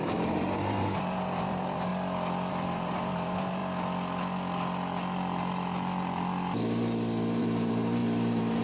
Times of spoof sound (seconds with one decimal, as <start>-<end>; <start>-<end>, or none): 0.0-1.9; 2.5-3.6; 7.4-8.6